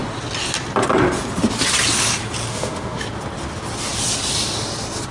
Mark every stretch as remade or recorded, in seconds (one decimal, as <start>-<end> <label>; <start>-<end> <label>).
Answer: 0.0-2.5 recorded; 2.5-3.0 remade; 3.0-5.1 recorded